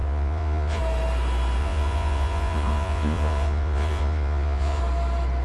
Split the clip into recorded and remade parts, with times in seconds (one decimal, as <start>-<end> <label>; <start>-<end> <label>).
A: 0.0-0.8 remade; 0.8-1.6 recorded; 1.6-4.8 remade; 4.8-5.4 recorded